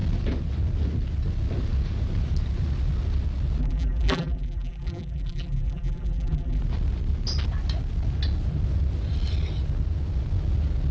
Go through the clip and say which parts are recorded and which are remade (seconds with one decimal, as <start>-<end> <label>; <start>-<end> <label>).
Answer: 0.0-3.6 recorded; 3.6-6.6 remade; 6.6-10.9 recorded